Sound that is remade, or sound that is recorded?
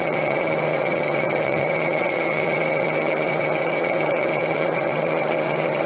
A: remade